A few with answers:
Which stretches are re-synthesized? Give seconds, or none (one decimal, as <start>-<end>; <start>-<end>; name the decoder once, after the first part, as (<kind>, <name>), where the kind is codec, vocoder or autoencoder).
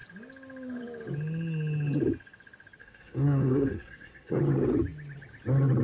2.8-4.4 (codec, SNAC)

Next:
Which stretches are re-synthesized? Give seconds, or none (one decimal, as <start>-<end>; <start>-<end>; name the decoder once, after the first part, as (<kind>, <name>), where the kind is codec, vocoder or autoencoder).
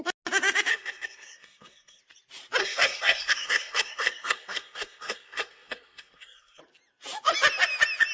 0.7-2.0 (codec, SNAC); 2.6-6.6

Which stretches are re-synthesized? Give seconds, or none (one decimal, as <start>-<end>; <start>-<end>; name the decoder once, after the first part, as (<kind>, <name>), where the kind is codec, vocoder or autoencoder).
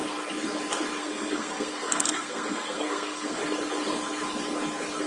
1.0-3.4 (codec, SNAC)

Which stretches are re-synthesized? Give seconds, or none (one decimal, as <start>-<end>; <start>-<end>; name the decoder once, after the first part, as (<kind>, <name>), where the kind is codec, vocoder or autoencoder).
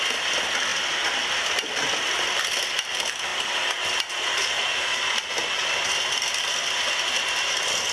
none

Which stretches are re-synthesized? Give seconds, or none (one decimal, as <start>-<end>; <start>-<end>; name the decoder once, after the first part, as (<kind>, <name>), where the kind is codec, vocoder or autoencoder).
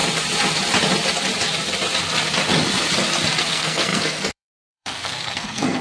3.4-5.8 (codec, SNAC)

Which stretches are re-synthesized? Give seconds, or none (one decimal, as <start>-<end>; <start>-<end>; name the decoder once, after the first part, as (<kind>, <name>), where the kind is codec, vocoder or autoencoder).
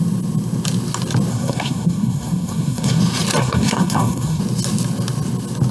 1.3-3.0 (codec, SNAC); 3.4-4.4